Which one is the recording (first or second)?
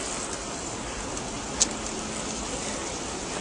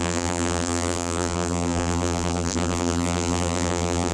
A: first